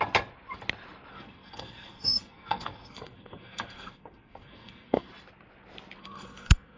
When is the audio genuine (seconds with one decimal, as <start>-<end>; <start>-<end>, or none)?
0.0-1.1; 5.1-6.0